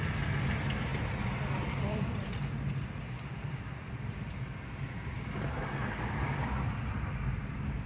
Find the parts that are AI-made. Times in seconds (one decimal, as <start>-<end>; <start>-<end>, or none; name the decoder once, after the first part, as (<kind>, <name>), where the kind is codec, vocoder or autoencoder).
none